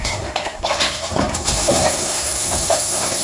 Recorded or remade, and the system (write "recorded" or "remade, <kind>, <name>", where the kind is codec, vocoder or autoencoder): remade, codec, SNAC